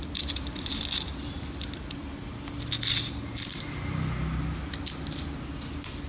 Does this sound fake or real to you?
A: real